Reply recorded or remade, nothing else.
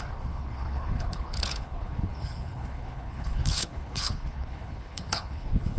remade